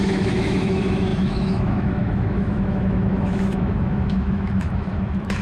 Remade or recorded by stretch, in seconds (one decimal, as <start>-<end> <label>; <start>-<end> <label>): 0.0-5.4 remade